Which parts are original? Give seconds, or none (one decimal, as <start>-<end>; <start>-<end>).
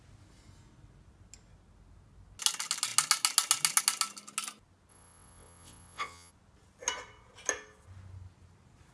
0.0-4.9; 6.3-8.9